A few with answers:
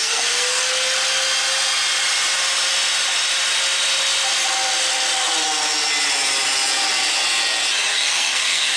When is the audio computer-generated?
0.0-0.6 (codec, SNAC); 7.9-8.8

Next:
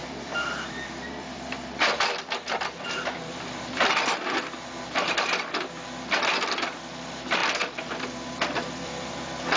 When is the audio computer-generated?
0.0-4.7 (vocoder, BigVGAN v2); 7.4-9.6